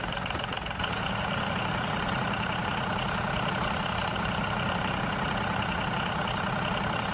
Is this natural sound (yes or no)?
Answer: no